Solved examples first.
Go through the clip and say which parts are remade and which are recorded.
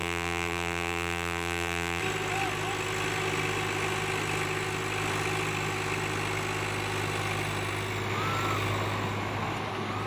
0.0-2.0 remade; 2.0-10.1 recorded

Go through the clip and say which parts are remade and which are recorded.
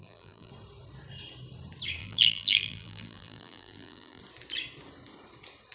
0.0-0.5 remade; 0.5-2.0 recorded; 2.0-4.2 remade; 4.2-5.7 recorded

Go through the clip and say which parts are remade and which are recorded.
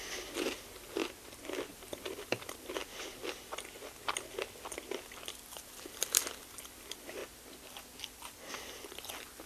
0.0-1.0 remade; 1.0-1.7 recorded; 1.7-2.8 remade; 2.8-5.5 recorded; 5.5-7.2 remade; 7.2-8.5 recorded; 8.5-9.5 remade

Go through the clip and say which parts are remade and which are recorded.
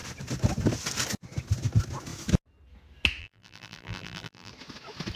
0.0-3.2 recorded; 3.2-4.5 remade; 4.5-5.2 recorded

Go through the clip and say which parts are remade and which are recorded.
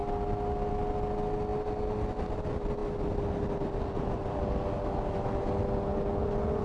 0.0-6.6 recorded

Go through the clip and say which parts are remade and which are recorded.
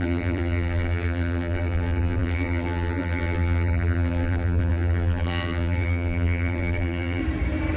0.0-7.2 remade; 7.2-7.8 recorded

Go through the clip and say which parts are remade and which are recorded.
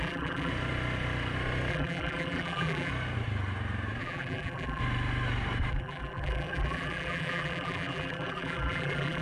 0.0-0.5 remade; 0.5-1.7 recorded; 1.7-2.9 remade; 2.9-4.0 recorded; 4.0-4.8 remade; 4.8-5.7 recorded; 5.7-9.2 remade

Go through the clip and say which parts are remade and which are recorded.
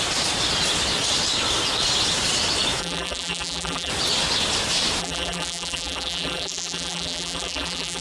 0.0-2.8 recorded; 2.8-3.9 remade; 3.9-5.0 recorded; 5.0-8.0 remade